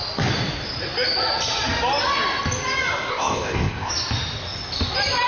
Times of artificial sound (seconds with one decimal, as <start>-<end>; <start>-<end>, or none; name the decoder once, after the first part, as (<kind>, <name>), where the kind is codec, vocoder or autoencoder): 3.1-3.9 (codec, ZipCodec)

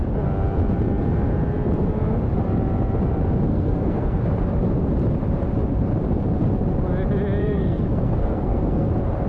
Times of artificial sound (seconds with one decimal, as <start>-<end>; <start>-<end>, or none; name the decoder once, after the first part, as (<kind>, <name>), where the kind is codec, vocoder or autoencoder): 3.5-4.2 (codec, SNAC); 7.4-8.9

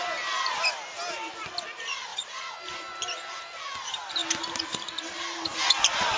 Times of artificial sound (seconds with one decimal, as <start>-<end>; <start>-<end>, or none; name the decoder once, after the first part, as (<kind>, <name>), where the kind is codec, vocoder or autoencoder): 2.1-2.6 (vocoder, Vocos)